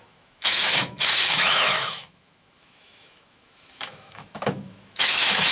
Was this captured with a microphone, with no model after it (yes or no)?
no